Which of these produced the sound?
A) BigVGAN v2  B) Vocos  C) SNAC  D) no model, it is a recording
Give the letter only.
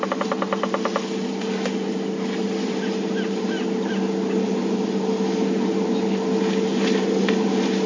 D